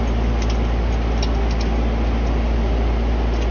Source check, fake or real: real